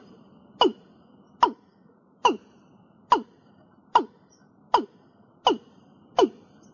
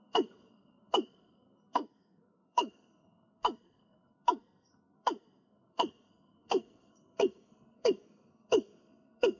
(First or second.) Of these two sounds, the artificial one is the second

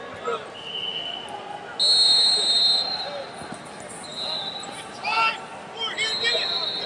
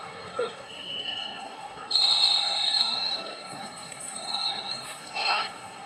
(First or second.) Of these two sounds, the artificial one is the second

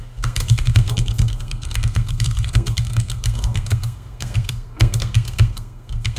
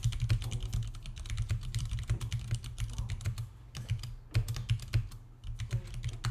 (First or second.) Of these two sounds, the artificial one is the first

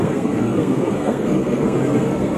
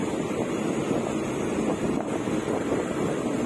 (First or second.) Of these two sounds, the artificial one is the first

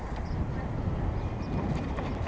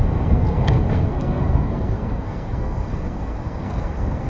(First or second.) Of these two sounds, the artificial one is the second